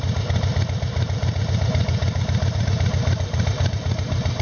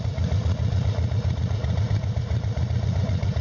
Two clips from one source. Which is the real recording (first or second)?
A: first